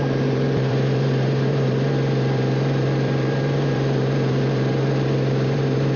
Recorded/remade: remade